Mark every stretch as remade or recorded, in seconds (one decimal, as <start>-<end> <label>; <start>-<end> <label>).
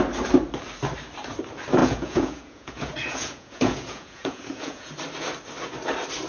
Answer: 0.0-1.8 recorded; 1.8-4.9 remade; 4.9-6.3 recorded